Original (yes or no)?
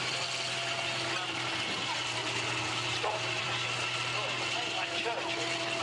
no